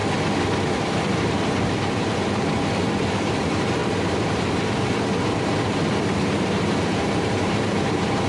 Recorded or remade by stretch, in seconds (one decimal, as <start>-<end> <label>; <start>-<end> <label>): 0.0-0.7 recorded; 0.7-8.3 remade